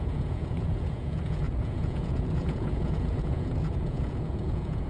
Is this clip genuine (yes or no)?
no